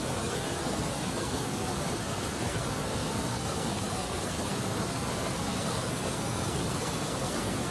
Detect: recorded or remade remade